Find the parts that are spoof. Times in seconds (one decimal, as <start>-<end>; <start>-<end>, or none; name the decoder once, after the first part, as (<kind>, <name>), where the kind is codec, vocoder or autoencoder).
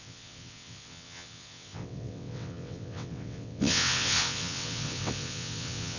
0.0-6.0 (vocoder, WaveNeXt)